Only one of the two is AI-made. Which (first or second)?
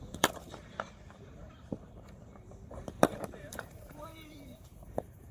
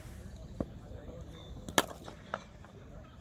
first